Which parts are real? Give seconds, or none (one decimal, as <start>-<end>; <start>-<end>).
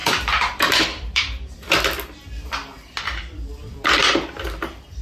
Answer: 1.7-5.0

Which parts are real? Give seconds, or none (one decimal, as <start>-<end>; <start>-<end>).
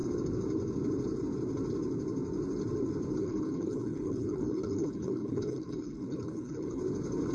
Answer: 0.0-3.2; 6.8-7.3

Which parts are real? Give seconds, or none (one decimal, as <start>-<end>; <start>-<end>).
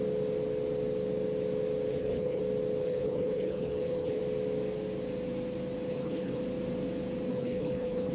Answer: 0.0-1.9; 2.4-2.8; 4.2-5.9; 6.4-7.3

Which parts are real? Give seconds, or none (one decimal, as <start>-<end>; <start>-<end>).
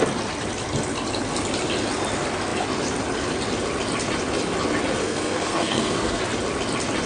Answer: 0.0-5.0; 6.2-7.1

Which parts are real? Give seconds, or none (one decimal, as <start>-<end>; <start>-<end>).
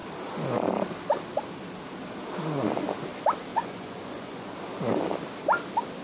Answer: 0.0-3.5; 4.5-6.0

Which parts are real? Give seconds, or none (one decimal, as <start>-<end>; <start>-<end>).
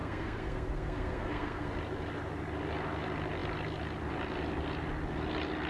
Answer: 1.7-5.7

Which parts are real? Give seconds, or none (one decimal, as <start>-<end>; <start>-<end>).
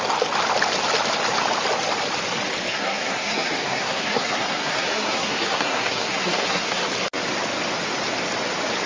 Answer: 0.0-2.7; 6.8-8.9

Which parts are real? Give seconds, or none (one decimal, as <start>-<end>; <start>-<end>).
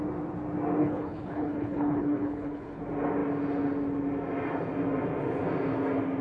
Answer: 0.0-0.8; 2.8-6.2